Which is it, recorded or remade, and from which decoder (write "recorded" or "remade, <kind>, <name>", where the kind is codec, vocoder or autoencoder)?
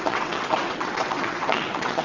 remade, vocoder, WaveNeXt